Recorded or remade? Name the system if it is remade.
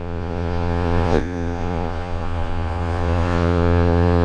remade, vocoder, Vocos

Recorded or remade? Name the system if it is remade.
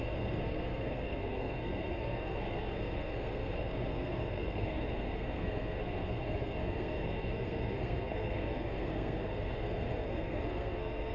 remade, codec, SNAC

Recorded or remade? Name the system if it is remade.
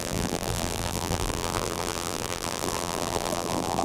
remade, vocoder, BigVGAN v2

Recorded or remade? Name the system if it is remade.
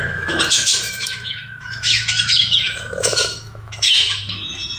remade, autoencoder, DAC-VAE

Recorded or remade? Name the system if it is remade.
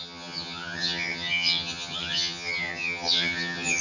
remade, vocoder, HiFi-GAN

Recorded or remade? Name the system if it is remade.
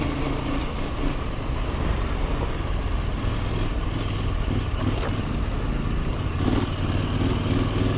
recorded